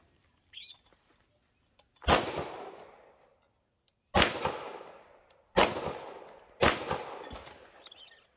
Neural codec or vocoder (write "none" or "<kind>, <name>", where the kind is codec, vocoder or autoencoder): none